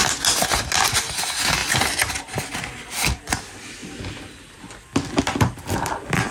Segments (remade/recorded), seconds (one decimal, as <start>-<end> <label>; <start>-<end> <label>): 0.0-1.6 recorded; 1.6-2.1 remade; 2.1-6.3 recorded

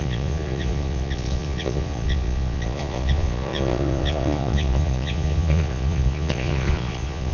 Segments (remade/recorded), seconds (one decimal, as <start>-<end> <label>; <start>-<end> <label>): 0.0-7.3 remade

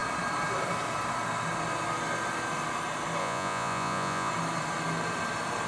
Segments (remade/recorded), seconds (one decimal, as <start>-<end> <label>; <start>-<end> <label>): 0.0-3.2 recorded; 3.2-4.3 remade; 4.3-5.7 recorded

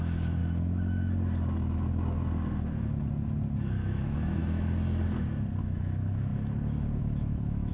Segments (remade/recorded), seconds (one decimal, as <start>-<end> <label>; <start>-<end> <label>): 0.0-0.4 remade; 0.4-3.6 recorded; 3.6-4.4 remade; 4.4-5.6 recorded; 5.6-6.3 remade; 6.3-7.0 recorded; 7.0-7.7 remade

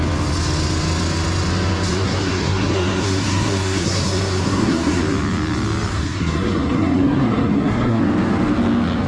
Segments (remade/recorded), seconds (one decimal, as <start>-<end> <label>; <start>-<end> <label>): 0.0-1.9 recorded; 1.9-5.0 remade; 5.0-5.9 recorded; 5.9-8.0 remade; 8.0-9.1 recorded

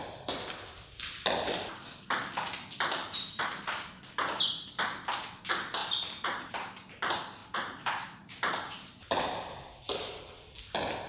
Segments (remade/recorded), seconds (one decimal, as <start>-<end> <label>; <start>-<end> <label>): 0.0-3.0 recorded; 3.0-4.0 remade; 4.0-5.8 recorded; 5.8-6.5 remade; 6.5-7.4 recorded; 7.4-9.8 remade; 9.8-11.1 recorded

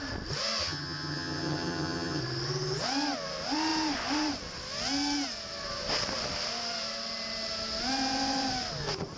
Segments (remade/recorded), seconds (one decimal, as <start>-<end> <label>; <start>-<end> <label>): 0.0-0.6 recorded; 0.6-2.2 remade; 2.2-9.2 recorded